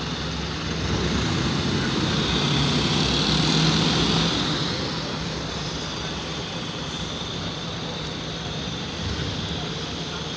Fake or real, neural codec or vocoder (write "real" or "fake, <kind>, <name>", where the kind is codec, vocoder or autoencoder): real